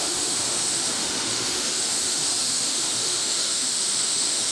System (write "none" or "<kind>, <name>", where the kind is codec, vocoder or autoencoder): autoencoder, DAC-VAE